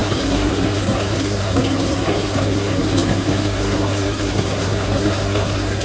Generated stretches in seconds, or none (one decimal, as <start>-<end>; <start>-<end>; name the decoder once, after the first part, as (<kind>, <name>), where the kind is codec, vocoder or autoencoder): 0.0-5.8 (codec, SNAC)